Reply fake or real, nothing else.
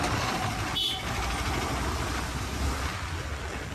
real